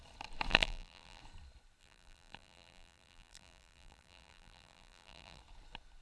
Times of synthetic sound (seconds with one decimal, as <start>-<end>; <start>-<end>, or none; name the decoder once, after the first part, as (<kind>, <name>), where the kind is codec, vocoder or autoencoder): 0.5-1.2 (vocoder, BigVGAN v2); 1.8-5.4